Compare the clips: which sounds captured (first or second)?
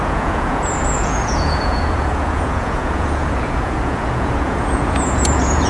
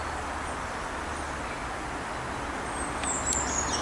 second